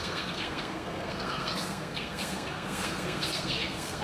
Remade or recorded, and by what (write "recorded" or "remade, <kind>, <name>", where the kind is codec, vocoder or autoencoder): remade, codec, SNAC